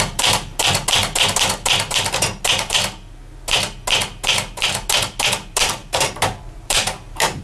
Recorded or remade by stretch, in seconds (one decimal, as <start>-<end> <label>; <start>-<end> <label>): 0.0-1.0 remade; 1.0-5.3 recorded; 5.3-7.4 remade